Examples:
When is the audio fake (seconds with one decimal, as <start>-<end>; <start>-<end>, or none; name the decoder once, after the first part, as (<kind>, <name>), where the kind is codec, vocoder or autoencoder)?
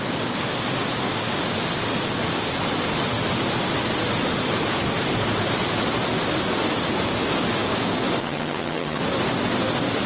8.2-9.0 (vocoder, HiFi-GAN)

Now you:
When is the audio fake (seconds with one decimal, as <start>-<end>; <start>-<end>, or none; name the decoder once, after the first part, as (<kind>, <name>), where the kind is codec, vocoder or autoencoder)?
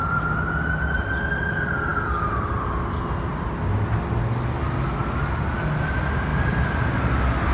6.3-7.0 (vocoder, BigVGAN v2)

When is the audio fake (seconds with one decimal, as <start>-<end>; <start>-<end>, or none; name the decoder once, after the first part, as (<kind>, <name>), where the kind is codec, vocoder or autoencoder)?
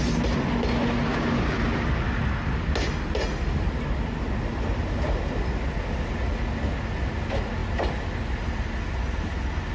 none